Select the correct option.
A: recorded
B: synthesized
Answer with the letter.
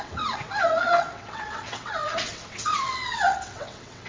B